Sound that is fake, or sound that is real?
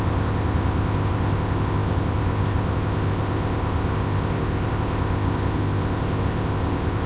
fake